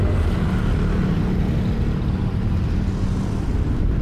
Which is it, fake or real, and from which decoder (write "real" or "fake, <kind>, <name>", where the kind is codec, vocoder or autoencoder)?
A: real